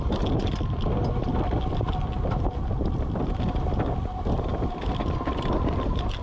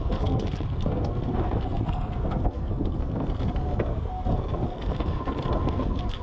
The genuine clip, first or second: first